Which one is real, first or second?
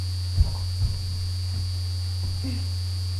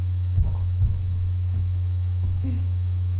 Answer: first